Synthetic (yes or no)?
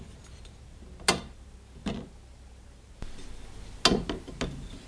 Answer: no